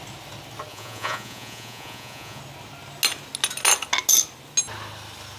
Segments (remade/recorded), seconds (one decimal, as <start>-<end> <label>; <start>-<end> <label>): 0.0-0.7 recorded; 0.7-2.4 remade; 2.4-5.4 recorded